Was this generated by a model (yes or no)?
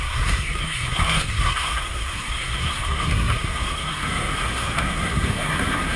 yes